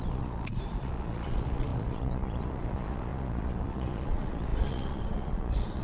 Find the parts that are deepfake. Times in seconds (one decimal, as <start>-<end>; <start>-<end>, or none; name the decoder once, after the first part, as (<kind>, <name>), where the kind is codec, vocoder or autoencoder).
0.0-5.8 (vocoder, Vocos)